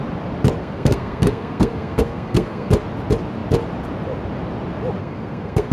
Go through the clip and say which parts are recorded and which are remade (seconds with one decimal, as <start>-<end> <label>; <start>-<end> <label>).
0.0-0.6 recorded; 0.6-2.7 remade; 2.7-5.0 recorded; 5.0-5.7 remade